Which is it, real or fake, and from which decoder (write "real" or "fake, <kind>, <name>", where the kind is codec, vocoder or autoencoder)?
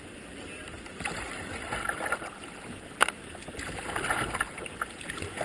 real